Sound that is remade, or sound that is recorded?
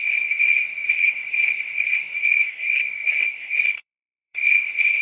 remade